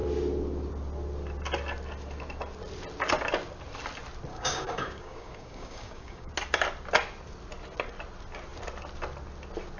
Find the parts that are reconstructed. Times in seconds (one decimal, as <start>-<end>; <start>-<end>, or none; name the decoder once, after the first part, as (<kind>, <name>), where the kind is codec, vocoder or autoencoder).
4.3-6.3 (codec, DAC)